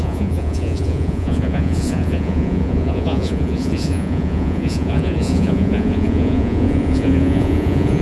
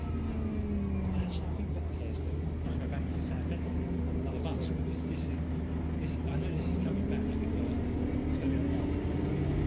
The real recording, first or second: second